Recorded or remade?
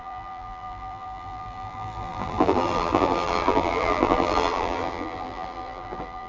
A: remade